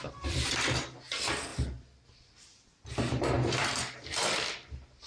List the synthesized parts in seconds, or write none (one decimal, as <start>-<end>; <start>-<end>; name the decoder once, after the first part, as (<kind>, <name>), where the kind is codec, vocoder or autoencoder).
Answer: 0.0-5.1 (vocoder, BigVGAN v2)